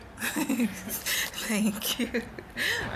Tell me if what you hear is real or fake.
real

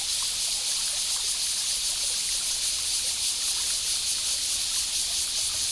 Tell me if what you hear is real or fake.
real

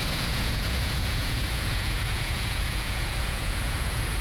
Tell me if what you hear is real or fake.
fake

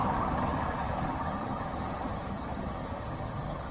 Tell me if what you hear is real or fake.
fake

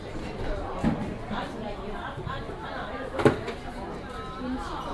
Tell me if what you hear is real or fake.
real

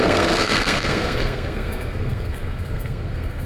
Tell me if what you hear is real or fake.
fake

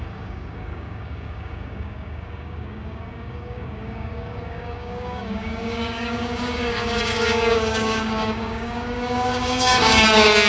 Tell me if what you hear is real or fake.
fake